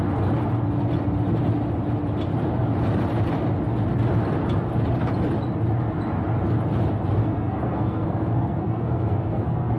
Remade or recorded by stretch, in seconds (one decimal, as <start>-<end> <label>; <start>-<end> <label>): 0.0-7.2 recorded; 7.2-9.8 remade